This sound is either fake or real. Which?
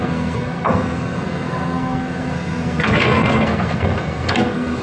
fake